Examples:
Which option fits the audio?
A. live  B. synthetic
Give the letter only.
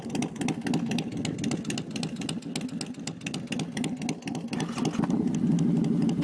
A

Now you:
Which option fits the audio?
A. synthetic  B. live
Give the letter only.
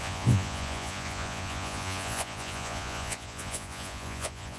A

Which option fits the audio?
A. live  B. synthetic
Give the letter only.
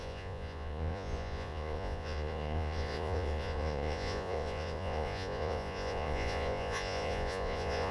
B